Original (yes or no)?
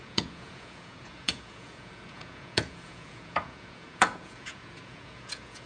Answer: no